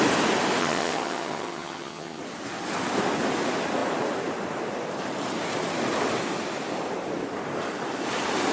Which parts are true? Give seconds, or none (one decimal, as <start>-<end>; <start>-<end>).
0.0-0.6; 2.2-8.5